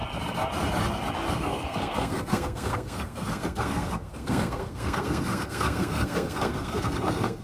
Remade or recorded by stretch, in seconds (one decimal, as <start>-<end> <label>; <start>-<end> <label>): 0.0-1.3 recorded; 1.3-7.4 remade